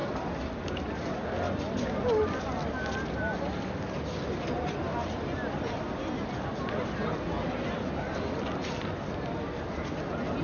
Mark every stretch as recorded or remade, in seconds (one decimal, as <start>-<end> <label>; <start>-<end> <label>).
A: 0.0-10.4 recorded